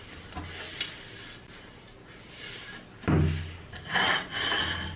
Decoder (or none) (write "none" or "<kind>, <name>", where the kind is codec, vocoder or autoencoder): none